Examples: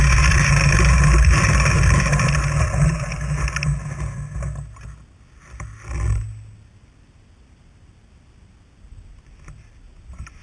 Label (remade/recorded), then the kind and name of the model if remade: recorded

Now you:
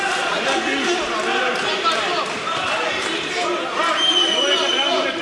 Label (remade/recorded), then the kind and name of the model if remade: recorded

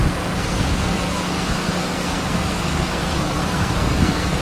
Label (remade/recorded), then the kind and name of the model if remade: remade, codec, SNAC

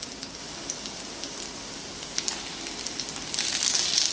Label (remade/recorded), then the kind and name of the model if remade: recorded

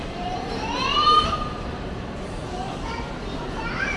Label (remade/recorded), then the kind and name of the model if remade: remade, vocoder, BigVGAN v2